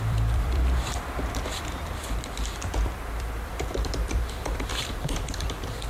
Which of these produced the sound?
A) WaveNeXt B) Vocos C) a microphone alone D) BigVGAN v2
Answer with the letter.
D